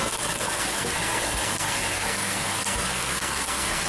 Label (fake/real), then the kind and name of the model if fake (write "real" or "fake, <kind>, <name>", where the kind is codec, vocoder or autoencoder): fake, codec, SNAC